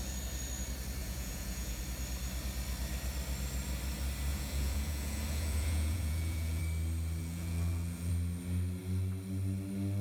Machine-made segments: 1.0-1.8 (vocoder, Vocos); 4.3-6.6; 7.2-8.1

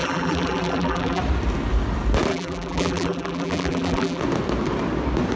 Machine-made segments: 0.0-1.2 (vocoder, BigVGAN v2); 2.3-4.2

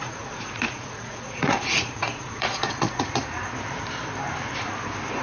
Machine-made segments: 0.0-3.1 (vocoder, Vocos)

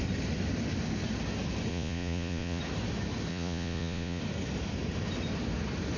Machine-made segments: 1.7-2.6 (vocoder, Vocos); 3.3-4.2

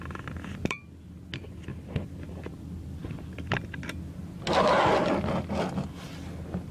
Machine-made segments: 3.0-4.2 (vocoder, BigVGAN v2)